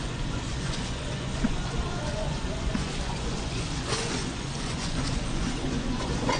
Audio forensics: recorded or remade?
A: remade